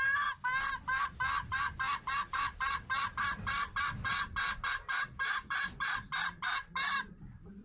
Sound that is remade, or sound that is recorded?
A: recorded